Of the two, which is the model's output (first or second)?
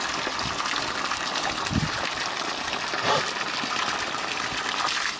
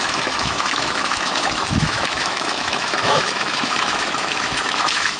second